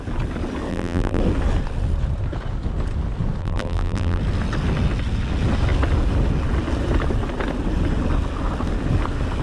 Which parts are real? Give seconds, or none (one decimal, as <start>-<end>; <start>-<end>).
0.0-0.7; 1.2-3.4; 4.2-9.4